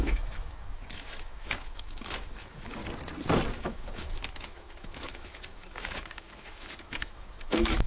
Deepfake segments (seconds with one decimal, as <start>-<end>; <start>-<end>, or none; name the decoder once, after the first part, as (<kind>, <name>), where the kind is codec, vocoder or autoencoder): 0.0-2.8 (autoencoder, DAC-VAE); 3.5-7.9